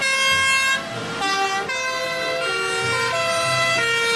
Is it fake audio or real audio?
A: real